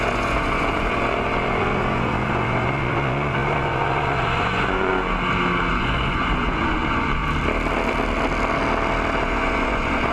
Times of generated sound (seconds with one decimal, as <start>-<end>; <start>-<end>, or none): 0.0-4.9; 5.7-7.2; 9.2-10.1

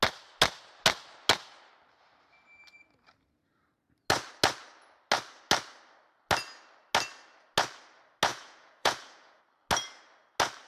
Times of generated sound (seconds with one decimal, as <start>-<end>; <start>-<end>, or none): 8.3-9.4

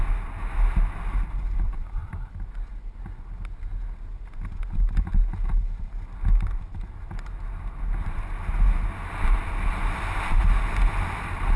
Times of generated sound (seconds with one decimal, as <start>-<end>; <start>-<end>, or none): none

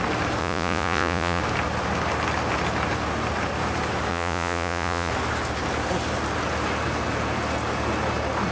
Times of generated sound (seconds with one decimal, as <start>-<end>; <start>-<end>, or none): 0.4-1.4; 4.1-5.1

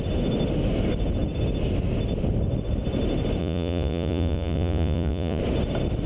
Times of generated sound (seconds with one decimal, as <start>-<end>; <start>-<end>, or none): 3.4-5.4

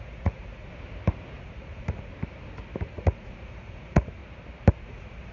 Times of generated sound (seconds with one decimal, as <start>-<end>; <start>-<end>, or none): 0.0-0.7; 1.4-2.1; 2.9-4.2; 4.7-5.3